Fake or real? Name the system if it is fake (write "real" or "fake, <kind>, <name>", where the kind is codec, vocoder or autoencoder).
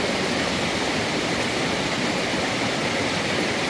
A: real